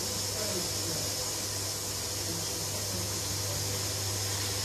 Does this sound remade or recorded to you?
recorded